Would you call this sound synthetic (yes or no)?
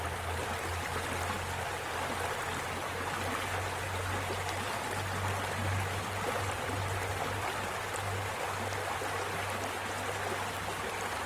no